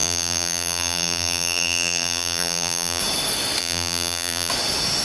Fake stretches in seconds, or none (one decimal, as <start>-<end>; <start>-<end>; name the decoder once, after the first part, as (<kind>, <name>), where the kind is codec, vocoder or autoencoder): 0.0-3.0 (vocoder, BigVGAN v2); 3.6-4.5